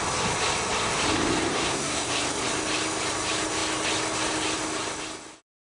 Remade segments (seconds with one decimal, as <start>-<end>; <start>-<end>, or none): 1.5-2.1